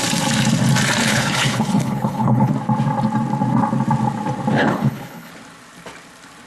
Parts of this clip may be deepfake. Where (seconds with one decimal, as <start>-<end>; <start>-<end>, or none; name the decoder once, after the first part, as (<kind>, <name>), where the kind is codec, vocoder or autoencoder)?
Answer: 1.0-2.5 (codec, HILCodec); 4.6-5.3